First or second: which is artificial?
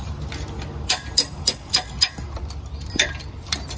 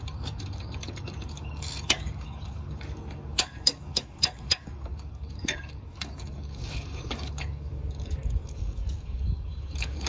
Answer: second